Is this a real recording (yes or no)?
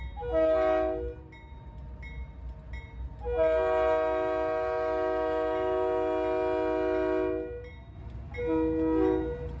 yes